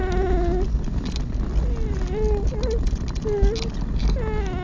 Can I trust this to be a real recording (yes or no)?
yes